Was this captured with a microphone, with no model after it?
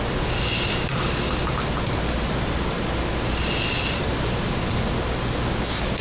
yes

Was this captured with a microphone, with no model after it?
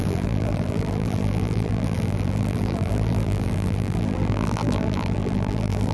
no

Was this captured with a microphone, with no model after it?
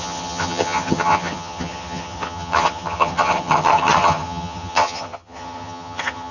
no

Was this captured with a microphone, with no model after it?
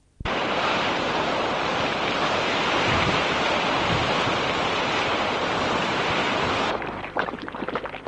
no